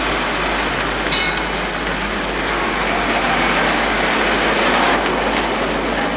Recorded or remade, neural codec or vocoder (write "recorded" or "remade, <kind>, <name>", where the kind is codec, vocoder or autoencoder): recorded